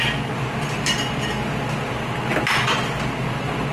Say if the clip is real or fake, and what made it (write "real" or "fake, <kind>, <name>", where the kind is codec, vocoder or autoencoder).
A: real